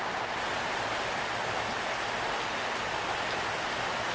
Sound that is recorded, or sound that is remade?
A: recorded